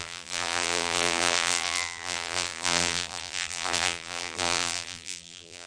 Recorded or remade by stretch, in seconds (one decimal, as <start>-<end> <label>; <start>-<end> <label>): 0.0-5.7 remade